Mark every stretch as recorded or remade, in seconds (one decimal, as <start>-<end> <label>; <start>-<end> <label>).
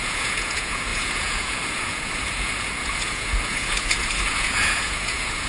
0.0-5.5 remade